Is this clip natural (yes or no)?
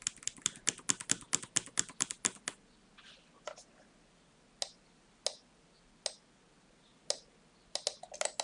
yes